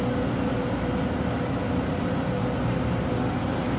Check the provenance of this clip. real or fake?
real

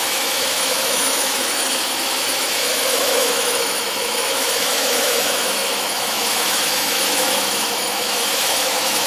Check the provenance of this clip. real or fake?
fake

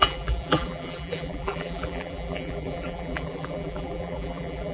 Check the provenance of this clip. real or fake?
fake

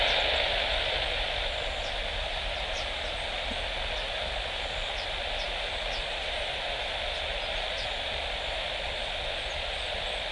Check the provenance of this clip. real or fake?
real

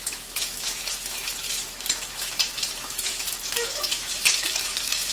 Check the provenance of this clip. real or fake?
fake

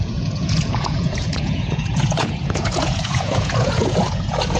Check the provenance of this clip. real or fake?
fake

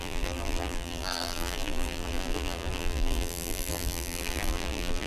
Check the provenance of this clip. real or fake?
fake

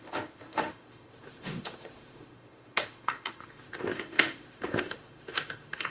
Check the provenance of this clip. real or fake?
fake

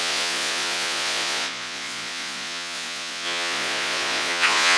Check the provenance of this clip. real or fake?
fake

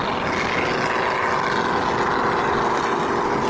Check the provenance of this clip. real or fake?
real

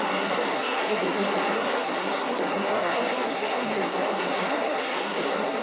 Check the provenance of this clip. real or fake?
fake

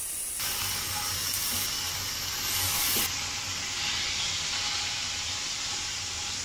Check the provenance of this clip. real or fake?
real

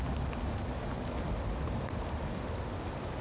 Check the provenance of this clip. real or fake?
real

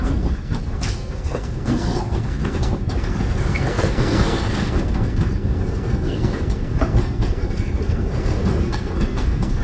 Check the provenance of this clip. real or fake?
fake